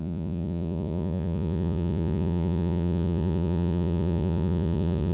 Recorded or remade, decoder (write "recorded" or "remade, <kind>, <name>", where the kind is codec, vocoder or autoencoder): remade, vocoder, Vocos